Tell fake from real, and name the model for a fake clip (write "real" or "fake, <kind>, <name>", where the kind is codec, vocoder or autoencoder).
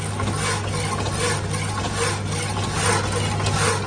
real